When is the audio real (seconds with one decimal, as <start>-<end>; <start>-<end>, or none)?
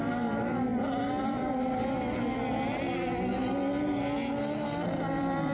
0.0-5.5